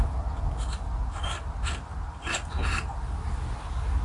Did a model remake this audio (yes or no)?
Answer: no